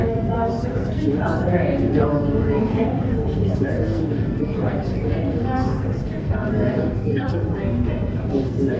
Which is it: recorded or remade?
remade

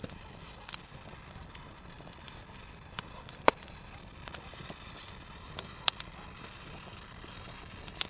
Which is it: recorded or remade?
recorded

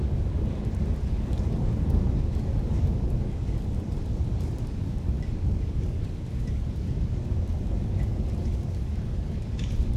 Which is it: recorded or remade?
remade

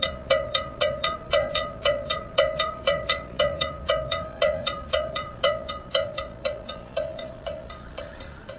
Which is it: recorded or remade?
remade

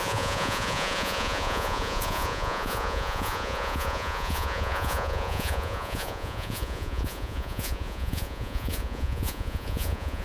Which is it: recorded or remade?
remade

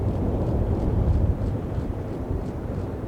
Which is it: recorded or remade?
remade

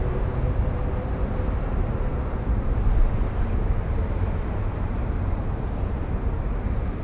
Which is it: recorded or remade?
remade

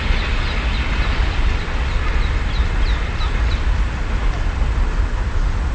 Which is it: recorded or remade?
recorded